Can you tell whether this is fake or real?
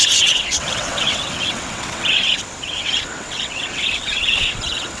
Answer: fake